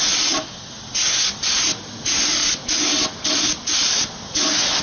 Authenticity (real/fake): real